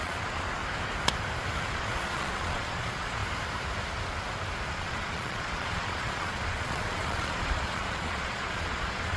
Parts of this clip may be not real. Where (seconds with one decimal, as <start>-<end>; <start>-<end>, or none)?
0.0-0.6; 1.6-3.2; 4.7-9.2